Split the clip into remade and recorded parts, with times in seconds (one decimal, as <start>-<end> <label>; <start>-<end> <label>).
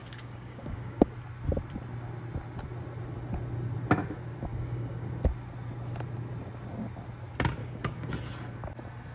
0.0-1.1 remade; 1.1-4.5 recorded; 4.5-5.1 remade; 5.1-7.6 recorded; 7.6-8.1 remade; 8.1-9.1 recorded